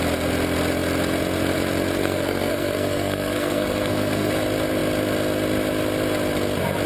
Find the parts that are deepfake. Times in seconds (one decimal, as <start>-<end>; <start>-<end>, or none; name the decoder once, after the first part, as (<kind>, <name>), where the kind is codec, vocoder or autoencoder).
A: 2.0-4.3 (codec, SNAC)